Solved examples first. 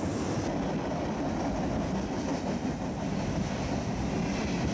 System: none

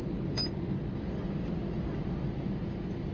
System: none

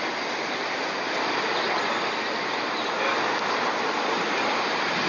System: none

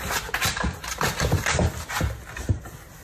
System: none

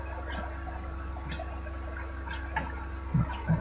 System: none